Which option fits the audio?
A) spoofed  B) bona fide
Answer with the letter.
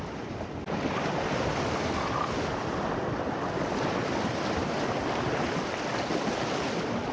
B